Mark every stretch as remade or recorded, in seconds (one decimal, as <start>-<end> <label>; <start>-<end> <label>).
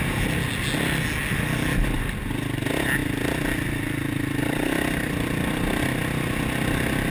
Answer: 0.0-7.1 recorded